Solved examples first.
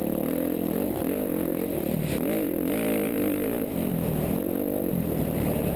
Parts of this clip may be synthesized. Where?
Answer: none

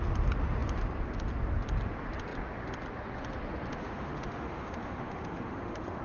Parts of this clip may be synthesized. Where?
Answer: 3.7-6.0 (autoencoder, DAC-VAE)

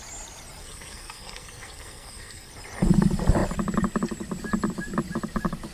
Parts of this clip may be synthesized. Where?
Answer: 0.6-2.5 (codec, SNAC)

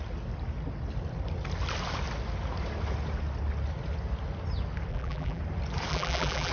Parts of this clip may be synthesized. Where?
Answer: 4.9-5.4 (vocoder, BigVGAN v2); 5.9-6.5

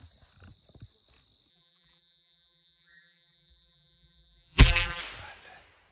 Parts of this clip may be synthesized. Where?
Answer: 1.5-5.0 (vocoder, BigVGAN v2)

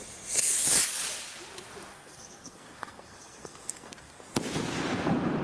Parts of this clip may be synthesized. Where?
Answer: 1.9-4.2 (codec, SNAC)

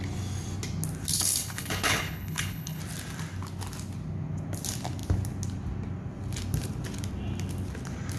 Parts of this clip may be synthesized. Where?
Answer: 1.1-2.8 (codec, HILCodec)